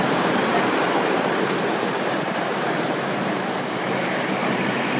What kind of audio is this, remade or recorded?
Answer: remade